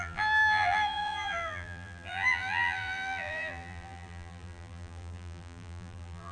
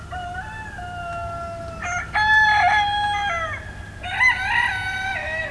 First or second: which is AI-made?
first